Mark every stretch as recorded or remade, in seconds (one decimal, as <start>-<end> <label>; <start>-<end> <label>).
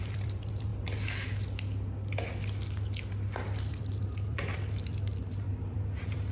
0.0-0.7 remade; 0.7-3.6 recorded; 3.6-6.3 remade